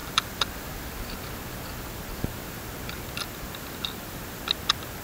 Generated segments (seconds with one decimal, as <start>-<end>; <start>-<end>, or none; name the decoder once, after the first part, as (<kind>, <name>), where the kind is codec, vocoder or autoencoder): 0.0-1.0 (vocoder, BigVGAN v2)